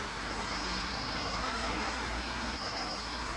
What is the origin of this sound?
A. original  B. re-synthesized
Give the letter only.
B